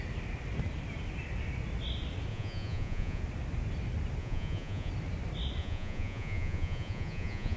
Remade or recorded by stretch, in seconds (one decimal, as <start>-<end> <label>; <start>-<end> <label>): 0.0-2.3 recorded; 2.3-3.2 remade; 3.2-4.2 recorded; 4.2-4.9 remade; 4.9-5.6 recorded; 5.6-7.6 remade